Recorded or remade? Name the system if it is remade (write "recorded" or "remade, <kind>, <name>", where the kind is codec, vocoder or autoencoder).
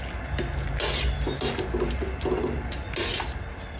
recorded